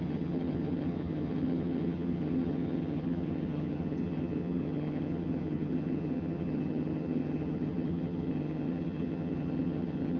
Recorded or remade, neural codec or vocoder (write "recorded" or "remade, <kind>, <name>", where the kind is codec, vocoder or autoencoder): remade, vocoder, HiFi-GAN